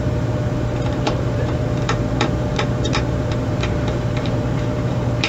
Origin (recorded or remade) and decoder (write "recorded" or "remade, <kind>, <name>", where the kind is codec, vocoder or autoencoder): remade, vocoder, BigVGAN v2